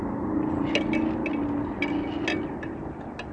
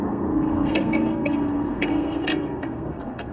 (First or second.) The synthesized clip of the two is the second